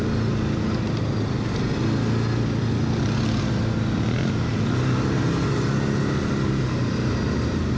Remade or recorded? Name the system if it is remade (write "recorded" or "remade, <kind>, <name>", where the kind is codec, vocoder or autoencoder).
recorded